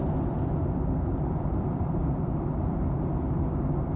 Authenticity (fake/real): fake